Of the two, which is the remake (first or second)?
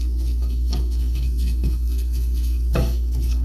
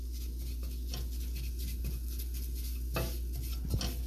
first